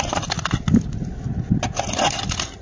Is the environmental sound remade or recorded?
recorded